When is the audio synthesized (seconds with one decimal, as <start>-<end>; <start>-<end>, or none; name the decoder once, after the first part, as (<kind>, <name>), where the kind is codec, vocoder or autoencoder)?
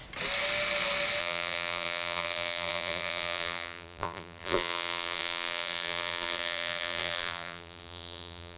1.2-8.6 (vocoder, BigVGAN v2)